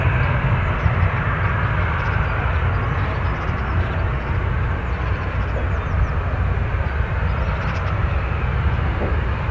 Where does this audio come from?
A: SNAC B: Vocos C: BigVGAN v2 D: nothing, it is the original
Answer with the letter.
D